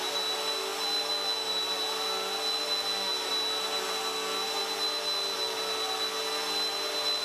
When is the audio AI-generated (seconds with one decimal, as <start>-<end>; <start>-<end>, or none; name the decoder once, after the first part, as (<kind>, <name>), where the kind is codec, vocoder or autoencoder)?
none